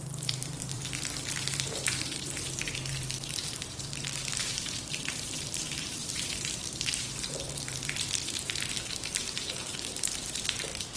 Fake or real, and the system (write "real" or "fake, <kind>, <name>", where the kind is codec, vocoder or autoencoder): fake, vocoder, BigVGAN v2